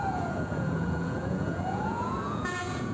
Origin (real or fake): fake